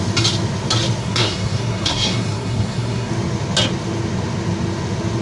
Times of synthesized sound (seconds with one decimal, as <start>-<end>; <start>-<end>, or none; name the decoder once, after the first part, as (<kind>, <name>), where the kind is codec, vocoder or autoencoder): 1.0-3.1 (codec, SNAC)